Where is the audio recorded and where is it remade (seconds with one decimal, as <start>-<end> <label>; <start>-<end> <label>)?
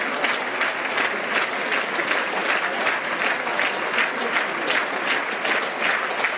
0.0-6.4 recorded